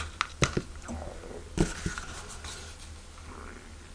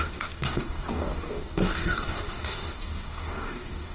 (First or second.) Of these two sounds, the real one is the first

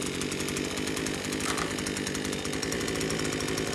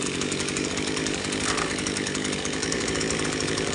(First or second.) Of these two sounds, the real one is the first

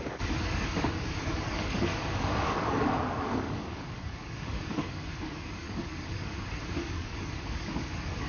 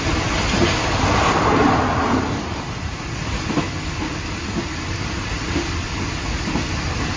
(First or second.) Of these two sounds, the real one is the second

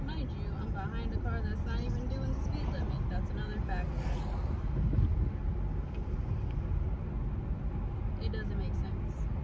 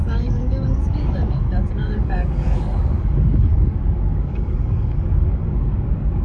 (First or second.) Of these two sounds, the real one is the first